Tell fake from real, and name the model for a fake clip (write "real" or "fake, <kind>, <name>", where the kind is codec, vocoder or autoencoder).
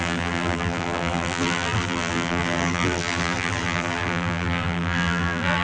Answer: fake, vocoder, BigVGAN v2